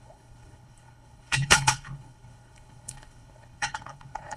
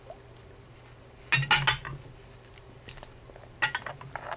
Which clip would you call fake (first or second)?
first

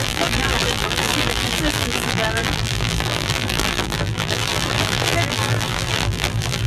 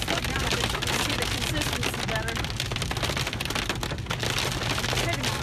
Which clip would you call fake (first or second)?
first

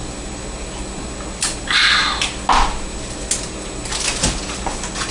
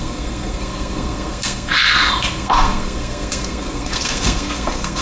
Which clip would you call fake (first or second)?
second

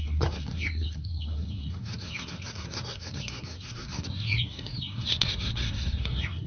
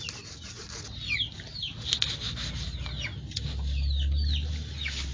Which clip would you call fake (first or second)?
first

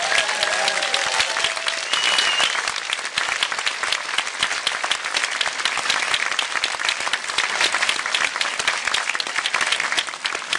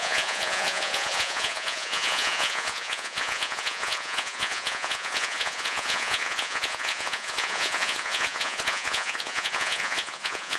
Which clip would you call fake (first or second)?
second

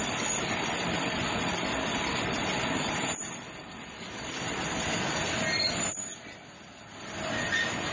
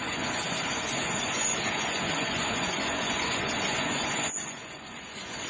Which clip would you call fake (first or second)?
second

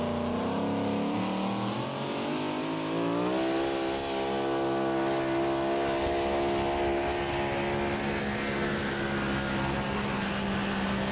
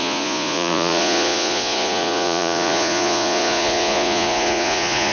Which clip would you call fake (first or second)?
second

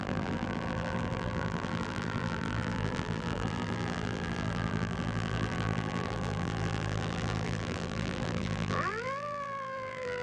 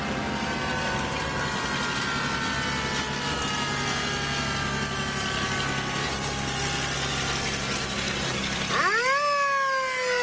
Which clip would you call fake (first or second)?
first